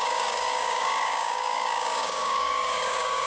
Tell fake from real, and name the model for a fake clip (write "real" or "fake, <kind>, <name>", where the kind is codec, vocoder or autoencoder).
fake, codec, DAC